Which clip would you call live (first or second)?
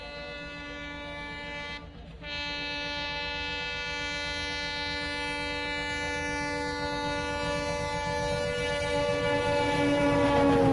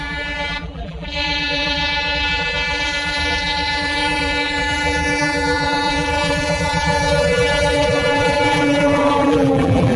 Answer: first